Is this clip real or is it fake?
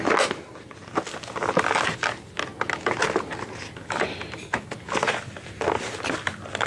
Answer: real